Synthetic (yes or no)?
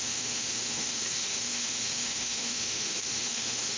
yes